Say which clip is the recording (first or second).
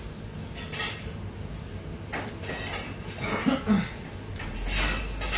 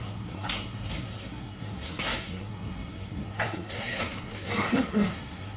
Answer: first